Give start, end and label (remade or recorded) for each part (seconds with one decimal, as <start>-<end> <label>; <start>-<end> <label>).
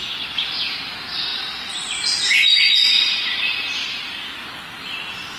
0.0-1.3 recorded; 1.3-2.0 remade; 2.0-3.8 recorded; 3.8-4.4 remade; 4.4-5.4 recorded